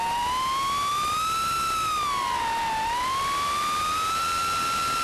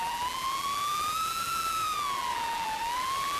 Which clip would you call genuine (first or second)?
first